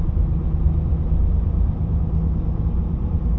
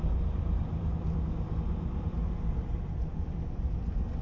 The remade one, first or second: second